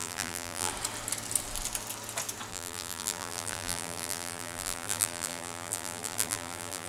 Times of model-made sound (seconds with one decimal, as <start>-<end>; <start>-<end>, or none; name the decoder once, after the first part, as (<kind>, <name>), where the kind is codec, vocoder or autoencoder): 0.0-0.7 (vocoder, BigVGAN v2); 2.5-6.9